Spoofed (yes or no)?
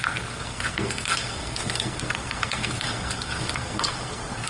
yes